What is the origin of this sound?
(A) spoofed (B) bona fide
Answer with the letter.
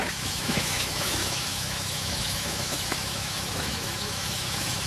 A